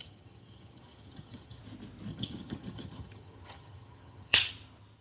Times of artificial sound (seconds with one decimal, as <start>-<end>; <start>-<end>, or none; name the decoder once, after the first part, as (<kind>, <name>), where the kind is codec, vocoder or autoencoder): 0.0-1.6 (vocoder, HiFi-GAN); 2.1-4.5